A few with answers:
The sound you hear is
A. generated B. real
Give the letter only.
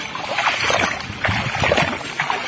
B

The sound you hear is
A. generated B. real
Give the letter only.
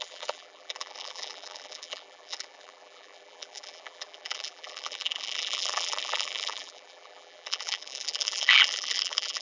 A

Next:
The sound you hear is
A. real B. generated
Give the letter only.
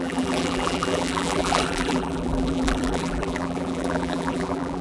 B